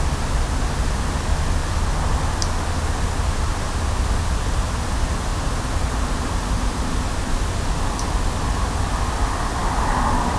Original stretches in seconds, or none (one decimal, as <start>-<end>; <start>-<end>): 0.0-10.4